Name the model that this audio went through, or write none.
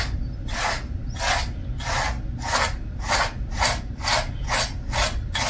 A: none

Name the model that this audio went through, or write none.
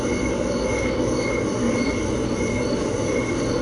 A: none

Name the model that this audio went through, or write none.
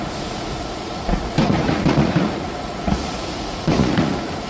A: vocoder, Vocos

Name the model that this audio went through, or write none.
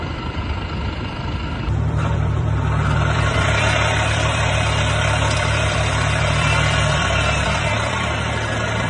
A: vocoder, BigVGAN v2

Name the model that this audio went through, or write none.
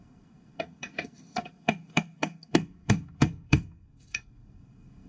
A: codec, SNAC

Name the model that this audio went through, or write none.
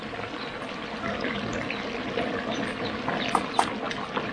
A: none